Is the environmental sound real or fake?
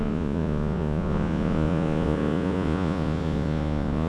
fake